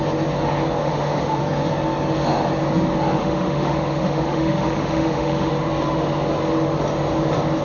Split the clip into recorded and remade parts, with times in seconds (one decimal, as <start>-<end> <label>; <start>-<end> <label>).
0.0-0.8 recorded; 0.8-1.4 remade; 1.4-3.2 recorded; 3.2-5.5 remade; 5.5-7.6 recorded